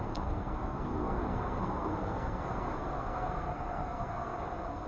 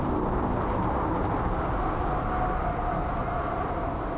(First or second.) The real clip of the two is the second